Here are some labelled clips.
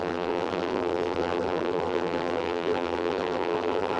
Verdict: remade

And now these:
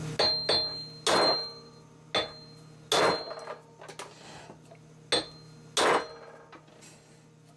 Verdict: recorded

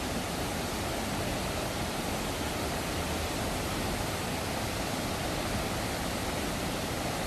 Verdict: recorded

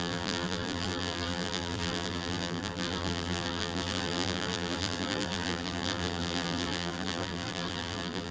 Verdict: remade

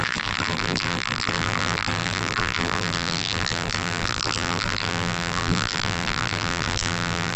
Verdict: remade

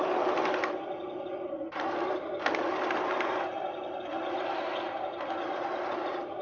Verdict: recorded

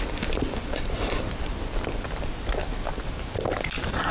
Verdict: remade